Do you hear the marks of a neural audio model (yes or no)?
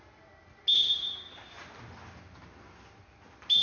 no